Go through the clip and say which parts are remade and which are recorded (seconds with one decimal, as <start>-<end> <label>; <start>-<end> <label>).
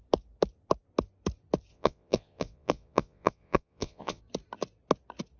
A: 0.0-1.7 recorded; 1.7-4.2 remade; 4.2-5.4 recorded